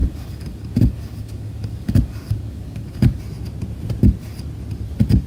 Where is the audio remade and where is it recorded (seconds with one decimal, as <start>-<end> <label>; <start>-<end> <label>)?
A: 0.0-3.2 remade; 3.2-5.3 recorded